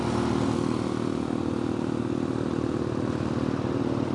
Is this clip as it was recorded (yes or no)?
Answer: yes